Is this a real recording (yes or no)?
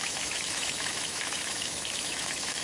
no